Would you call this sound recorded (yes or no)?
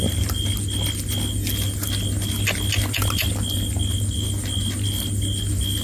yes